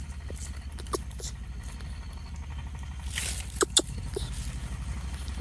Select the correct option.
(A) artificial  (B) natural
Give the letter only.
B